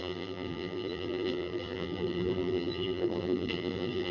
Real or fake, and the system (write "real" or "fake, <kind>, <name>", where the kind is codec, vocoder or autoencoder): fake, vocoder, BigVGAN v2